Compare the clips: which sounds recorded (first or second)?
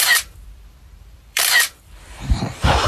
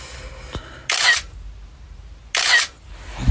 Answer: second